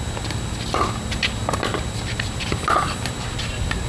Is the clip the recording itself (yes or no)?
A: yes